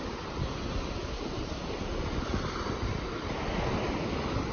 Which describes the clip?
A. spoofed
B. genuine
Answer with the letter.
B